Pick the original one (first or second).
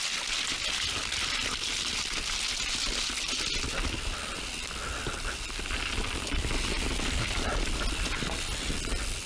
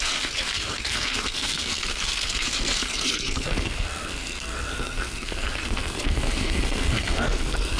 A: first